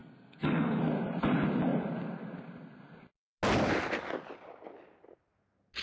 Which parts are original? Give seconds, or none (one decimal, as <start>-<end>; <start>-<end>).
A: 0.8-5.8